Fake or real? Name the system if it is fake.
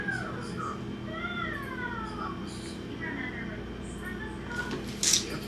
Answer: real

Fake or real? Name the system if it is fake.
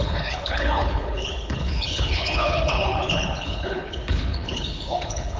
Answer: fake, codec, HILCodec